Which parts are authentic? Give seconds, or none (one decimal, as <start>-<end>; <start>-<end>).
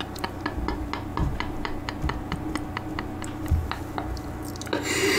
0.0-5.2